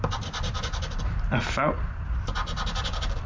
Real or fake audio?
real